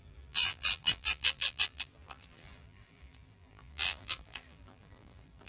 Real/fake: fake